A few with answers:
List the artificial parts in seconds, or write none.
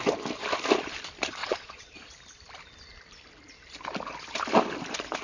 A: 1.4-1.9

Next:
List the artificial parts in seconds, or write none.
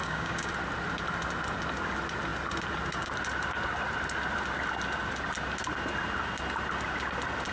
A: 0.0-0.5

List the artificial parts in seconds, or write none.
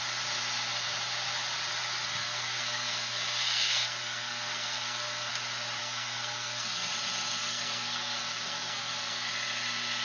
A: 2.1-5.3; 5.8-6.9; 7.4-9.3